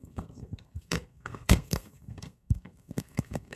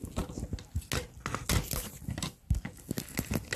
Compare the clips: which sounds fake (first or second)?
first